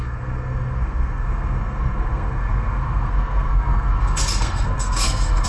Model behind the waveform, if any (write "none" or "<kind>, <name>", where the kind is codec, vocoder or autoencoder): codec, SNAC